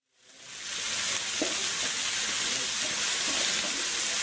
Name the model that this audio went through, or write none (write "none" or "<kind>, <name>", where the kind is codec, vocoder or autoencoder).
none